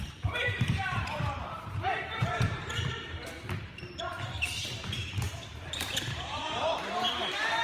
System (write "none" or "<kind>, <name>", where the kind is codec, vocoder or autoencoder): vocoder, BigVGAN v2